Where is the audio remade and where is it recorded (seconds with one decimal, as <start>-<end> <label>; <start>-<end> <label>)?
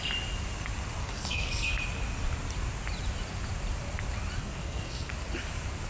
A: 0.0-1.0 recorded; 1.0-1.7 remade; 1.7-4.4 recorded; 4.4-5.1 remade; 5.1-5.9 recorded